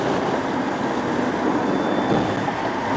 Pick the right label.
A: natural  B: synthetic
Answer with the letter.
A